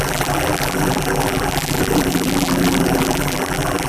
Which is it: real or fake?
fake